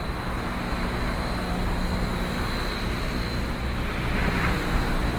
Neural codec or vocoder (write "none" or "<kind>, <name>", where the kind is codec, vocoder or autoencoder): none